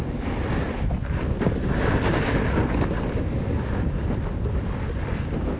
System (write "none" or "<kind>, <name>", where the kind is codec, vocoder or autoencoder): none